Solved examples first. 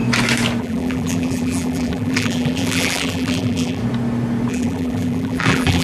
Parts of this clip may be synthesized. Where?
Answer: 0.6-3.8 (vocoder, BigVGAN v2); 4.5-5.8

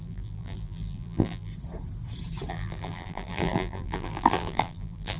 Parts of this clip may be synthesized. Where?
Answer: 0.0-1.5 (vocoder, BigVGAN v2); 2.5-5.2

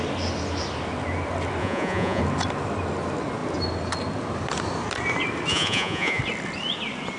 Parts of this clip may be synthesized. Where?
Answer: 1.6-2.2 (vocoder, Vocos); 5.5-6.2

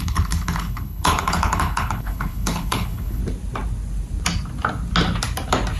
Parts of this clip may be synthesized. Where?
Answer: 0.0-3.2 (codec, HILCodec)

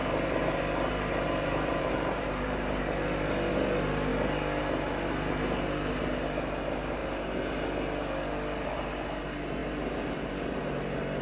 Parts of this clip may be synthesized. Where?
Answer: 0.0-2.8 (vocoder, BigVGAN v2); 9.6-10.3